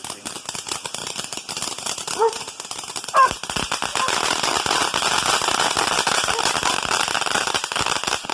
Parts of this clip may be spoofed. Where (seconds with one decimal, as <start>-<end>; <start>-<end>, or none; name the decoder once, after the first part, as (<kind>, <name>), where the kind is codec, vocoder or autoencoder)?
none